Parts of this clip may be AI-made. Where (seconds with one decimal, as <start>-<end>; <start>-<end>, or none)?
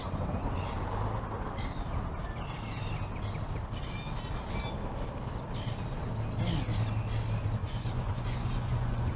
7.6-9.2